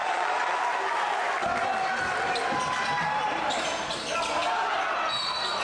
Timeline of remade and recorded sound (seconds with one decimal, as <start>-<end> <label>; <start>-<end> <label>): 0.0-0.6 remade; 0.6-5.6 recorded